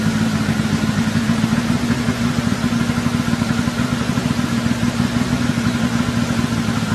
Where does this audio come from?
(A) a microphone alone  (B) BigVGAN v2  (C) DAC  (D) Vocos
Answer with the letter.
B